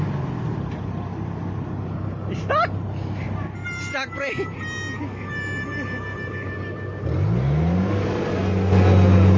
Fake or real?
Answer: real